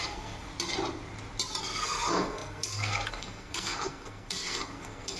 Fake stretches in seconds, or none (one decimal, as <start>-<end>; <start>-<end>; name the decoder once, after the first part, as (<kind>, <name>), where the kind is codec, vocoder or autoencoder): 0.0-0.5 (codec, SNAC); 1.6-5.2

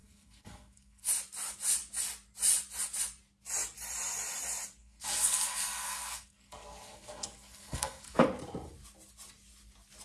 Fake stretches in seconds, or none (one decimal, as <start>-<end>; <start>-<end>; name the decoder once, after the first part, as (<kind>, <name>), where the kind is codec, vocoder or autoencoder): 0.0-1.1 (codec, SNAC); 4.8-8.2